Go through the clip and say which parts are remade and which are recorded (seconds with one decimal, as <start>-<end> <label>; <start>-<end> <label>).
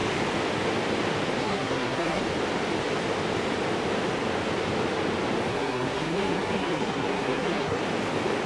0.0-1.4 recorded; 1.4-2.2 remade; 2.2-5.5 recorded; 5.5-7.8 remade; 7.8-8.5 recorded